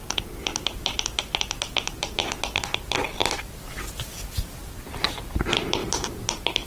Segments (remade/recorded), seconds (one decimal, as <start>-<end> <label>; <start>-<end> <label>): 0.0-3.2 recorded; 3.2-5.3 remade; 5.3-6.7 recorded